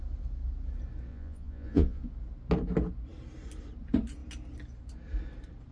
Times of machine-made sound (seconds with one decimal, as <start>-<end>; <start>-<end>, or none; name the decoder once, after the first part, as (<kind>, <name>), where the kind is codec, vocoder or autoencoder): 1.1-2.0 (vocoder, Vocos)